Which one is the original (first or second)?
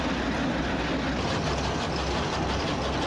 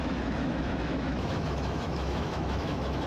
first